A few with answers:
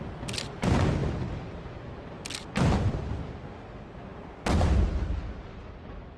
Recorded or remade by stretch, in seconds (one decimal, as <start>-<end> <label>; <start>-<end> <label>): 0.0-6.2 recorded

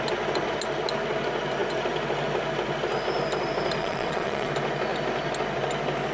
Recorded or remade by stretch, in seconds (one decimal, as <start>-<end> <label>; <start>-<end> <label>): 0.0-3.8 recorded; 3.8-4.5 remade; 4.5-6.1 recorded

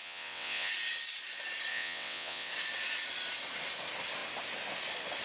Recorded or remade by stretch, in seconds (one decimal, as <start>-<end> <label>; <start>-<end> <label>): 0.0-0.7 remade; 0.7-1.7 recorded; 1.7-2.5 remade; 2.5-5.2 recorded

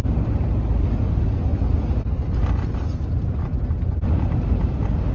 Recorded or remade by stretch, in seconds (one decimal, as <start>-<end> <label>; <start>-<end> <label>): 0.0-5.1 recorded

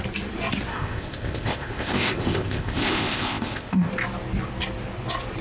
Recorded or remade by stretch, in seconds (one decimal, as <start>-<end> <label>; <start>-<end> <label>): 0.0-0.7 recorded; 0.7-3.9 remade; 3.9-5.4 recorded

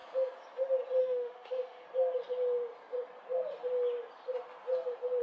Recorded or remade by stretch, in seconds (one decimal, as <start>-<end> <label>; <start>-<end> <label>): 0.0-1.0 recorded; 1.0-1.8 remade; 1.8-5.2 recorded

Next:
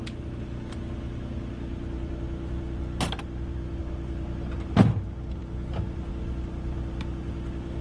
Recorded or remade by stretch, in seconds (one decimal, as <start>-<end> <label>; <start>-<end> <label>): 0.0-7.8 recorded